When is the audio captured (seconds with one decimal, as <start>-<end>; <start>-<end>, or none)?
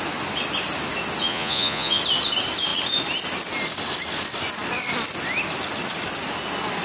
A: 0.0-1.2; 2.0-6.8